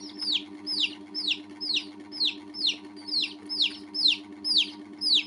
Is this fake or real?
real